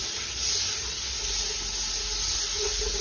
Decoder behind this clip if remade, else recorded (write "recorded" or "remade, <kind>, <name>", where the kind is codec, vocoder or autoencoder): recorded